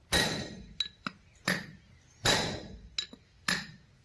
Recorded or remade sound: recorded